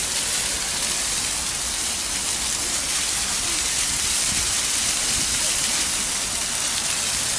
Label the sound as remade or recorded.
recorded